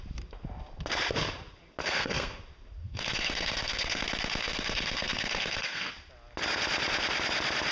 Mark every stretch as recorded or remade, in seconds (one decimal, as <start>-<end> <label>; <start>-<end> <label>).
0.0-1.8 recorded; 1.8-2.4 remade; 2.4-2.8 recorded; 2.8-4.0 remade; 4.0-4.4 recorded; 4.4-5.9 remade; 5.9-7.7 recorded